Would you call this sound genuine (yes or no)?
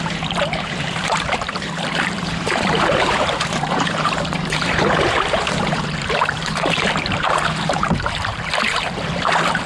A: no